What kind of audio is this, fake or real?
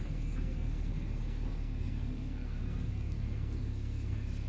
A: fake